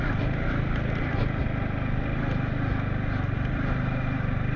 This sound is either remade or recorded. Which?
recorded